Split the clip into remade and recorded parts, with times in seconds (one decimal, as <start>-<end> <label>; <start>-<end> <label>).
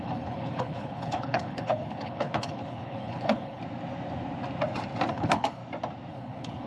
0.0-3.6 remade; 3.6-5.1 recorded; 5.1-5.6 remade; 5.6-6.1 recorded; 6.1-6.7 remade